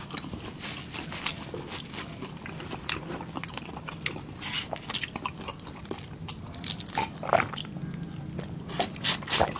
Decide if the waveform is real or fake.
real